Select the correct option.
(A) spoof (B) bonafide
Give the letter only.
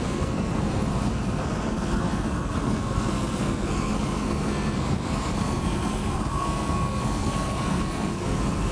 A